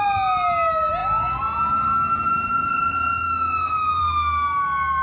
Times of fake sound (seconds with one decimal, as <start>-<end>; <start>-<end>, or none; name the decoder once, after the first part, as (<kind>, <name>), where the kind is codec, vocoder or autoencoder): none

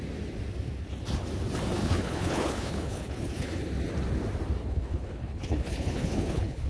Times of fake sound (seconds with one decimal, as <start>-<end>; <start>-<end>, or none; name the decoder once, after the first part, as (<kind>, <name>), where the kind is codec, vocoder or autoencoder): 1.8-3.6 (codec, HILCodec); 4.6-6.7